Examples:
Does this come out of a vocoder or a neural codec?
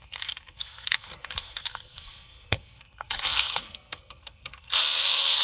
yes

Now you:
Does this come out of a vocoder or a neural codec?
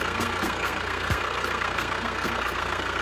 yes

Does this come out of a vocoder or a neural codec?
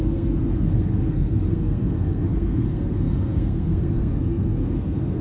yes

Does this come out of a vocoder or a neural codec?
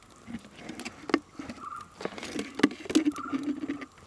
no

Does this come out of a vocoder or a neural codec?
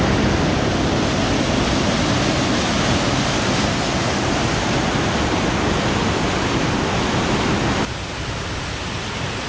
no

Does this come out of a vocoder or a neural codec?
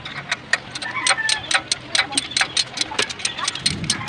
no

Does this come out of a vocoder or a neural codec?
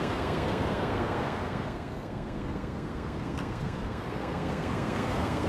yes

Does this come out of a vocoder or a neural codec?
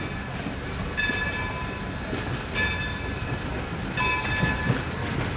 no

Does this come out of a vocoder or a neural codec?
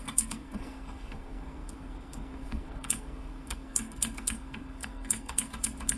yes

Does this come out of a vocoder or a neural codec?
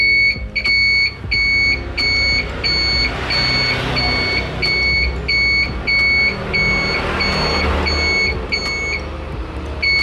no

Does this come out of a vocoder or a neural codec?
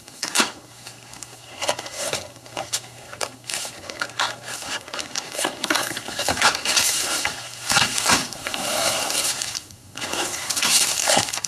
yes